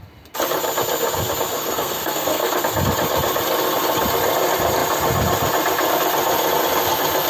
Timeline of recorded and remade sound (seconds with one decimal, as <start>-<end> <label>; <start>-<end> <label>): 0.0-1.6 recorded; 1.6-2.6 remade; 2.6-7.3 recorded